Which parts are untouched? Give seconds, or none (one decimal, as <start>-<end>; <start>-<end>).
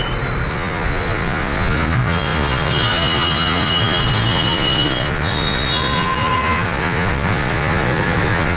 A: 0.0-0.5